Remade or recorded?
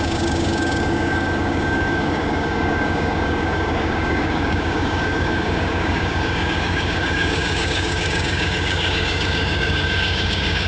remade